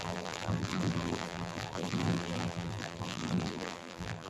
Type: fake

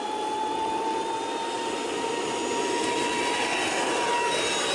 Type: real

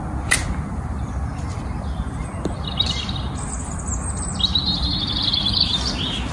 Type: real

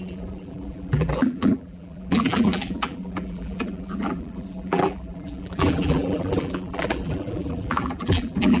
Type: fake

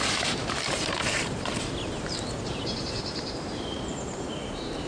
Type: fake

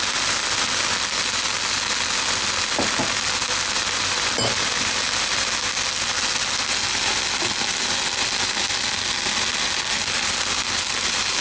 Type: real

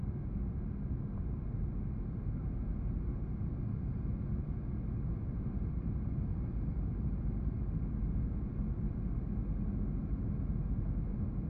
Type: real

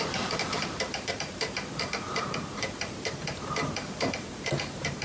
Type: fake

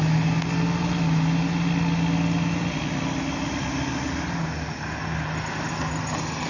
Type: real